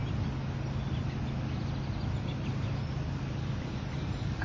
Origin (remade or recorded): recorded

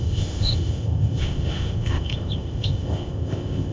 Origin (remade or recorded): remade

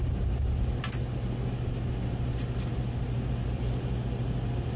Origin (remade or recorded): recorded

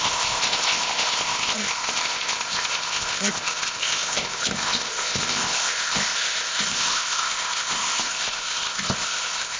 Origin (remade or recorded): remade